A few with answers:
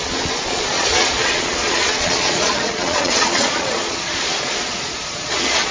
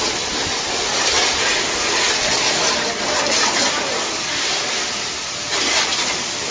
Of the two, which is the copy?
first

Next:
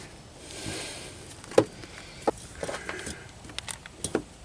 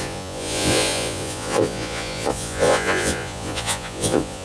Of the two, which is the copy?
second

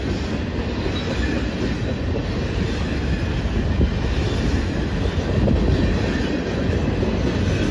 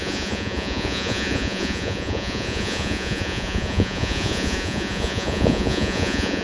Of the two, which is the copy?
second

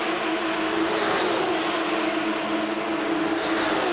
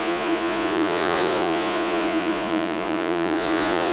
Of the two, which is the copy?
second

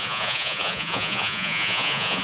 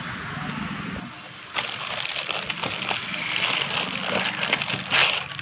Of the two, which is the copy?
first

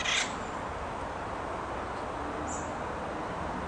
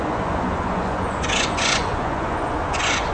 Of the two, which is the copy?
second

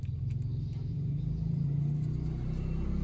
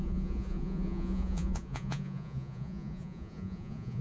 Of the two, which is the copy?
second